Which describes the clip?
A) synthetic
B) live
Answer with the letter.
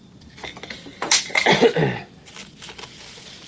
B